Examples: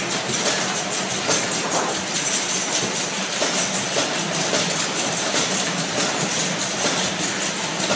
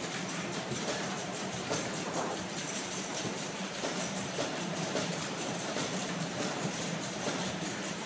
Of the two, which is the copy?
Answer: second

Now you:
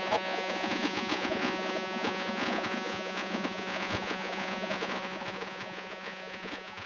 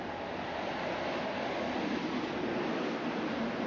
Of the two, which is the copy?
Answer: first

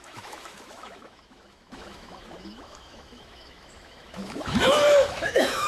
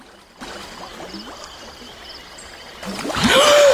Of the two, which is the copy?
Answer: first